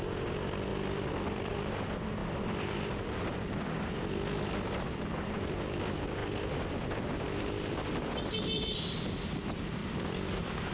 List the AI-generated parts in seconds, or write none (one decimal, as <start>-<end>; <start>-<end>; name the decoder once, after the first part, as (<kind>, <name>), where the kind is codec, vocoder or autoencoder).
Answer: 0.7-1.5 (vocoder, BigVGAN v2); 2.2-3.4; 9.8-10.7